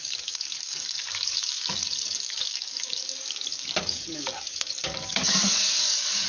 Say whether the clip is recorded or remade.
remade